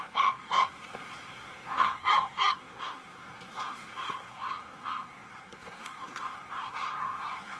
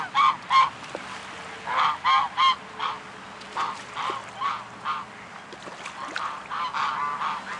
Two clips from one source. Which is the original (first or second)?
second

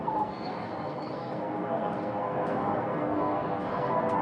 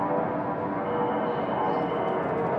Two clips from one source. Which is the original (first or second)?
second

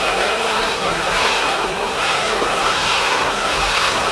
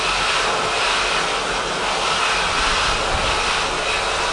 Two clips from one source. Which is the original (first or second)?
second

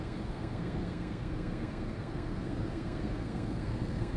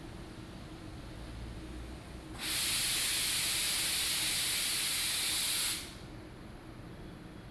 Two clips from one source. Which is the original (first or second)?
second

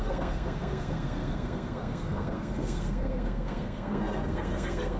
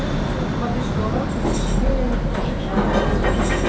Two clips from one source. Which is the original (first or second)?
second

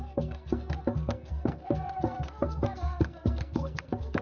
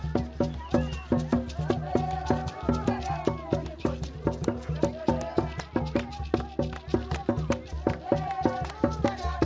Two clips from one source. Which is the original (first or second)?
second